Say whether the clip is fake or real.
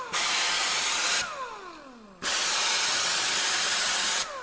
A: real